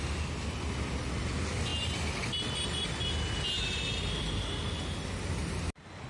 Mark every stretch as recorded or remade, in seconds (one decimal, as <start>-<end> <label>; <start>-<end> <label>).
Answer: 0.0-6.1 recorded